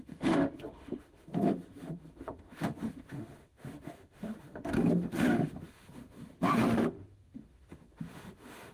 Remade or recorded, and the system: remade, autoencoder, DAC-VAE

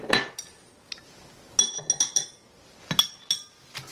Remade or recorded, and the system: recorded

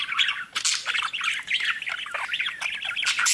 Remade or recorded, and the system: recorded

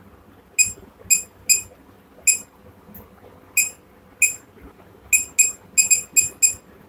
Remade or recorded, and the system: recorded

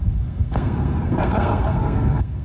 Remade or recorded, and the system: remade, codec, SNAC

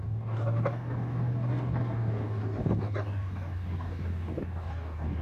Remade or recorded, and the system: remade, codec, DAC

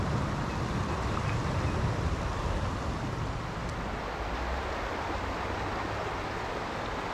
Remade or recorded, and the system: recorded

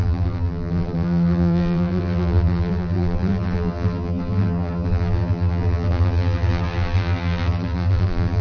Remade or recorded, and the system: remade, vocoder, BigVGAN v2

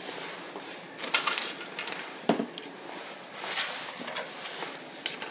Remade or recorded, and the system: recorded